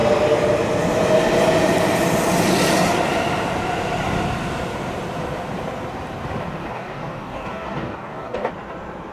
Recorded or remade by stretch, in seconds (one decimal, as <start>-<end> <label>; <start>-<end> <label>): 0.0-6.6 recorded; 6.6-8.5 remade; 8.5-9.1 recorded

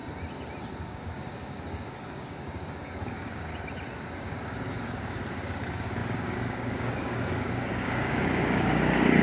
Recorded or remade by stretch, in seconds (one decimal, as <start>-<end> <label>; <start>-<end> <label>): 0.0-0.8 recorded; 0.8-3.5 remade; 3.5-4.1 recorded; 4.1-9.2 remade

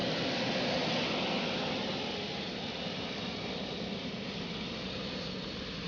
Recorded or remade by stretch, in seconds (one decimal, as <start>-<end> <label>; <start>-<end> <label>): 0.0-5.9 recorded

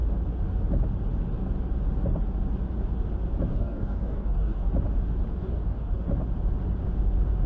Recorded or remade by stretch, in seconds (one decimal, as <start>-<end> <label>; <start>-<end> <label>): 0.0-3.5 recorded; 3.5-4.7 remade; 4.7-5.4 recorded; 5.4-6.0 remade; 6.0-7.5 recorded